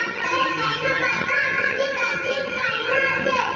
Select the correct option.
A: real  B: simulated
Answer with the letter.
B